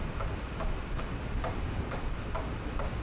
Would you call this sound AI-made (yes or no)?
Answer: no